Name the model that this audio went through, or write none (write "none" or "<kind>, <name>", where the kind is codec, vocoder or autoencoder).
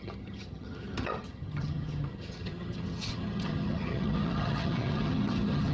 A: vocoder, HiFi-GAN